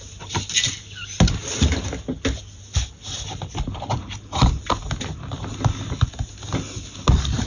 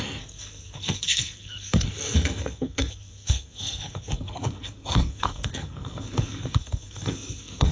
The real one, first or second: first